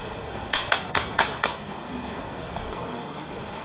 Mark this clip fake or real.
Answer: fake